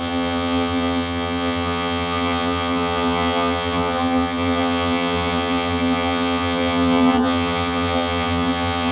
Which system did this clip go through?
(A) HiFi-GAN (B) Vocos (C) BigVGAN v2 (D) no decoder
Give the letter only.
A